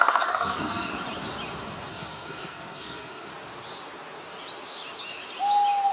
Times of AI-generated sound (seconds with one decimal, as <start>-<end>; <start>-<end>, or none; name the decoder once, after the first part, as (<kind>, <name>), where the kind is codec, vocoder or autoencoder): 0.0-0.9 (codec, SNAC); 1.9-3.3